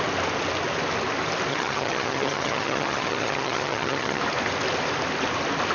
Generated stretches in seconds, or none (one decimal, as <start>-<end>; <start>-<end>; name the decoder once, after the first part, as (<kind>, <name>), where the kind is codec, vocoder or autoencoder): 1.5-4.2 (vocoder, HiFi-GAN)

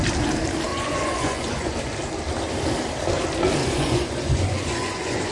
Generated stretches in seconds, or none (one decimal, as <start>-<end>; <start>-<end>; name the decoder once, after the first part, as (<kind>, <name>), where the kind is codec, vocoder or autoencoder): 0.7-1.7 (vocoder, Vocos); 3.6-5.3

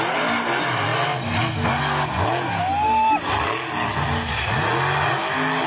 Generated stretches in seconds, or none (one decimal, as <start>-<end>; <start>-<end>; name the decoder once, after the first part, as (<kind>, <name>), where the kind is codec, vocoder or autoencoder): none

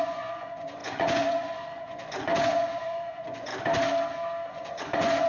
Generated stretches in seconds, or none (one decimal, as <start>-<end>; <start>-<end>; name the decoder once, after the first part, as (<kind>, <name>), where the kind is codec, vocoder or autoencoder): 0.0-3.5 (vocoder, Vocos); 4.5-5.3

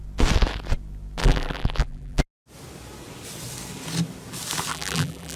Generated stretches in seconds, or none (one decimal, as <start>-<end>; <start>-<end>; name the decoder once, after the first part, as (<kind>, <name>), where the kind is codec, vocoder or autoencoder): 1.2-2.2 (vocoder, BigVGAN v2); 4.7-5.4

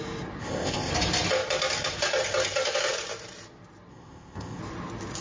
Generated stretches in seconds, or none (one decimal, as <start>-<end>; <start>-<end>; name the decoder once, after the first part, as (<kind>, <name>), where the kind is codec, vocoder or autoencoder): 0.4-0.9 (codec, ZipCodec); 3.9-4.6

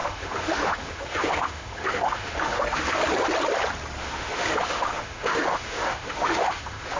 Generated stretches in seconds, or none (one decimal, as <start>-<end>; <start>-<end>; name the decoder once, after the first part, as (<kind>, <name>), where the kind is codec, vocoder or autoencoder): 0.0-3.0 (autoencoder, DAC-VAE); 4.0-7.0